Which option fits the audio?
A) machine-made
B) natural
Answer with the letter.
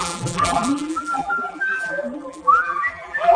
A